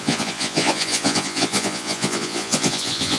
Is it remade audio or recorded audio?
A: remade